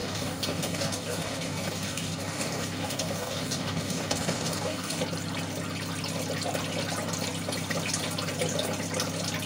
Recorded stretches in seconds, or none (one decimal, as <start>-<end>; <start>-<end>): 5.0-9.5